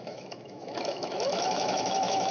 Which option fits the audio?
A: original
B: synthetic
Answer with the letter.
B